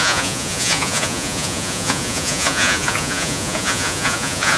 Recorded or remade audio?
remade